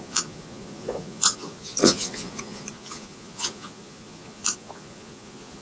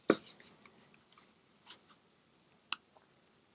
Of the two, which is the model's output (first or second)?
first